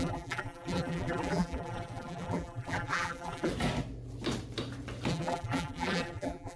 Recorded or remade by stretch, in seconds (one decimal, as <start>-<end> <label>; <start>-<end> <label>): 0.0-3.5 remade; 3.5-5.1 recorded; 5.1-6.6 remade